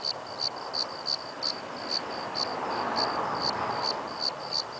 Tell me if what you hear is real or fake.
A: real